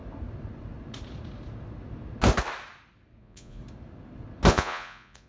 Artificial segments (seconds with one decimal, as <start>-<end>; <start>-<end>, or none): 3.2-3.6; 4.5-5.3